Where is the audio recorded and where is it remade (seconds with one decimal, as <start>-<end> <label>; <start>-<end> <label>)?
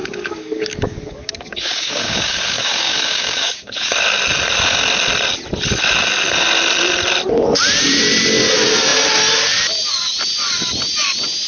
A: 0.0-3.9 remade; 3.9-11.5 recorded